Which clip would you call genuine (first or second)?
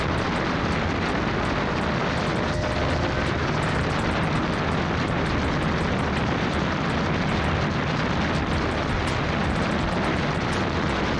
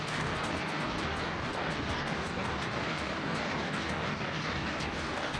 first